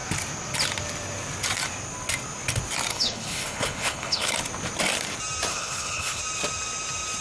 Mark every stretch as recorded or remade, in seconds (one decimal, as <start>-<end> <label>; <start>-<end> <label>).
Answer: 0.0-2.9 recorded; 2.9-4.3 remade; 4.3-5.5 recorded; 5.5-6.2 remade; 6.2-7.2 recorded